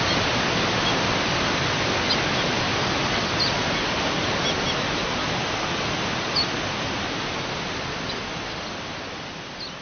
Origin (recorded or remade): recorded